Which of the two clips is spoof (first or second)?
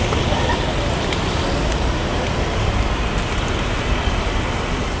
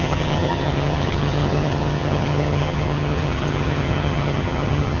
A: second